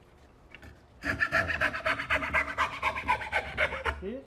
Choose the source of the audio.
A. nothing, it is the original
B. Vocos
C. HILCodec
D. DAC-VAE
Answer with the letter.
A